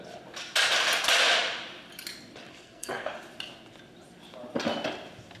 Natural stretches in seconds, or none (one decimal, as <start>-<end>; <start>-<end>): 0.0-2.5; 3.1-5.4